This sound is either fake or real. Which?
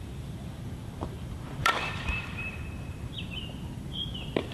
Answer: fake